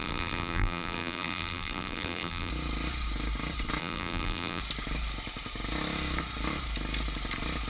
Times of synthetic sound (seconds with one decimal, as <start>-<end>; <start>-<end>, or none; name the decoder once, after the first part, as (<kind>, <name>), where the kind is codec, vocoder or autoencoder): 0.0-2.5 (vocoder, BigVGAN v2); 3.8-4.6